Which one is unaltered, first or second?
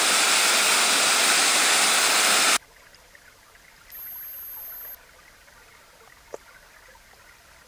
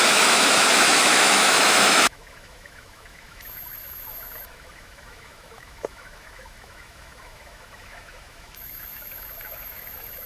first